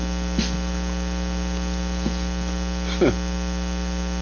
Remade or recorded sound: recorded